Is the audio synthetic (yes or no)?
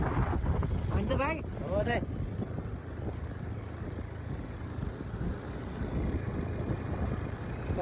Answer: yes